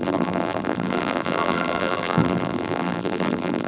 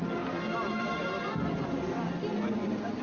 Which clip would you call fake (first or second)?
first